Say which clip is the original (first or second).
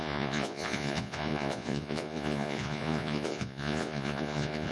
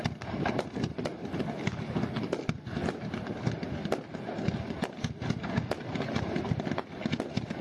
second